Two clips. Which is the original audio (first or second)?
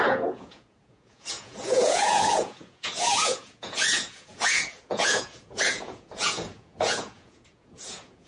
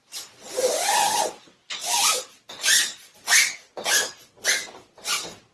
second